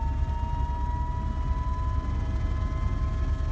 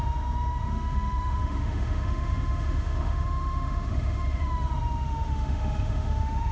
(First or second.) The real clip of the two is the first